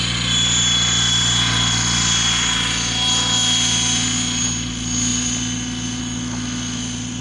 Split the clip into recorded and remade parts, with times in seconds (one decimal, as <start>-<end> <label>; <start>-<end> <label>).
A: 0.0-7.2 recorded